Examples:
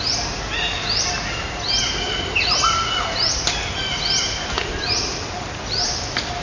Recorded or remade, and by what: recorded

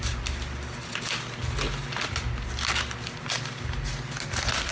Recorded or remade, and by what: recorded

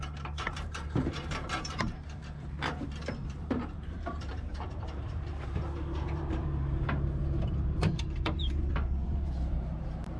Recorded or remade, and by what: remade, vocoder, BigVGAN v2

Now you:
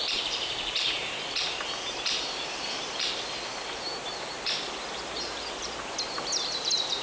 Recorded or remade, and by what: remade, vocoder, BigVGAN v2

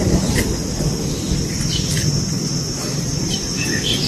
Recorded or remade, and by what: remade, vocoder, BigVGAN v2